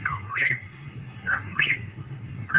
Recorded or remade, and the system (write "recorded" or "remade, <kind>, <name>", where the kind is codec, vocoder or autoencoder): remade, codec, SNAC